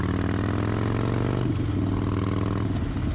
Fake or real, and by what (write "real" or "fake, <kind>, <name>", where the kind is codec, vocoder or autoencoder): real